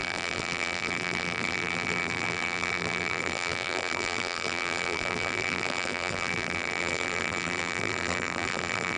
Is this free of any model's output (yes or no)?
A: no